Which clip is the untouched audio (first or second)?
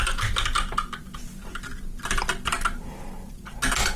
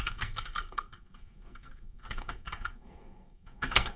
first